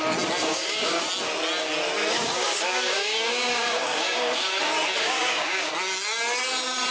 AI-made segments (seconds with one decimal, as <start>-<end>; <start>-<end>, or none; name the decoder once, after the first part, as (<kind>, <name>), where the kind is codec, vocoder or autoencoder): 0.4-1.1 (codec, DAC); 2.0-4.6; 5.0-5.7

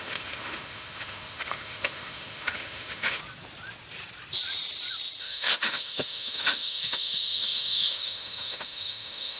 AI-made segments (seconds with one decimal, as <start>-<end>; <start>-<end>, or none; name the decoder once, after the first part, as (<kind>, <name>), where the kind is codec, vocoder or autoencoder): 0.0-3.2 (autoencoder, DAC-VAE); 5.2-9.4

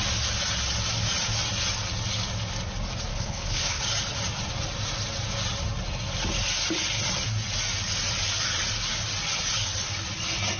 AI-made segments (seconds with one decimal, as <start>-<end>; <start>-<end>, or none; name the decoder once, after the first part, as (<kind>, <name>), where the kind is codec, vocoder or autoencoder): 3.1-3.8 (codec, HILCodec)

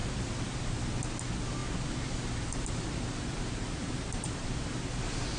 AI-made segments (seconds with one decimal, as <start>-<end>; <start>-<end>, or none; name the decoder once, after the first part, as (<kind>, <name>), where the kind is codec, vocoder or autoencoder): 0.0-0.9 (vocoder, BigVGAN v2); 1.6-4.8

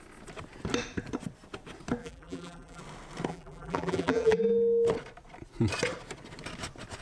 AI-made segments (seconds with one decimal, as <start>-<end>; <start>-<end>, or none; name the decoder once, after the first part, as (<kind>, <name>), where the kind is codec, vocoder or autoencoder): 2.0-2.8 (vocoder, BigVGAN v2); 3.3-4.4

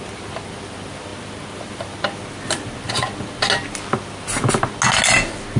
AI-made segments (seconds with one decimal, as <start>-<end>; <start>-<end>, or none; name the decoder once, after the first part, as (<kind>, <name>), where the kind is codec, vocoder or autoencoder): none

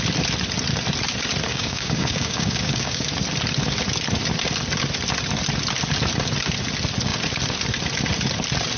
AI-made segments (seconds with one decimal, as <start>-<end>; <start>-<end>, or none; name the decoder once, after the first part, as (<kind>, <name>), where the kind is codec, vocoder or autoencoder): 1.5-3.1 (codec, DAC)